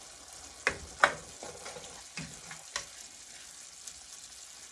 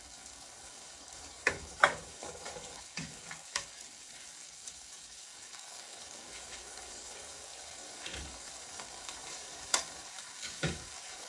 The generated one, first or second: second